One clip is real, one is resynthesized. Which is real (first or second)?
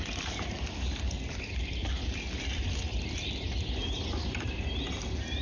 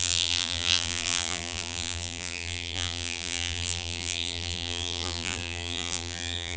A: first